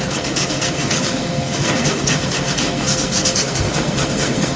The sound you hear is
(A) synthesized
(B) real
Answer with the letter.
A